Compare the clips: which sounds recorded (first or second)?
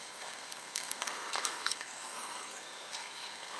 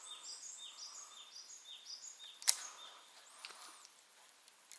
second